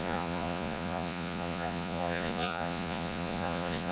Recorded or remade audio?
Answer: remade